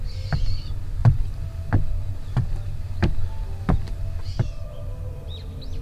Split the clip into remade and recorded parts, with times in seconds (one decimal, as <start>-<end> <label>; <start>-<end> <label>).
0.0-1.0 recorded; 1.0-1.7 remade; 1.7-5.8 recorded